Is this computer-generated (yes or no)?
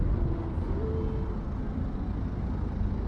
no